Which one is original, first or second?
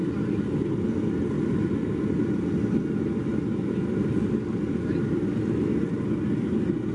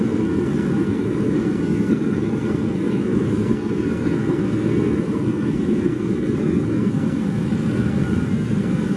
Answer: first